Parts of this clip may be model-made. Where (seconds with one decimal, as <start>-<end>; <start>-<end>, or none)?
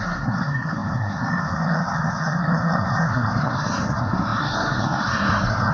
0.0-5.7